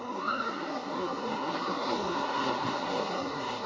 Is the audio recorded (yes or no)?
no